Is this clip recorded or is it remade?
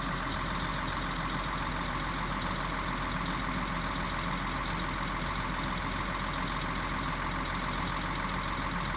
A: recorded